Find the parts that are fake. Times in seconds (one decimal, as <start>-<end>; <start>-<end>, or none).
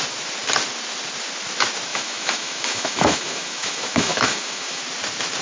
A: 1.9-4.8